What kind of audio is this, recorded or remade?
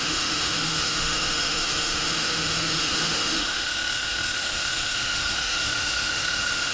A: remade